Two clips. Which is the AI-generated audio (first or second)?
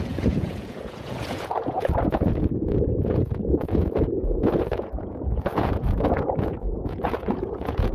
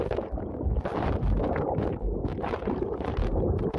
first